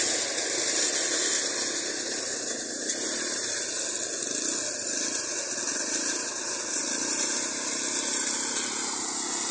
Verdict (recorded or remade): recorded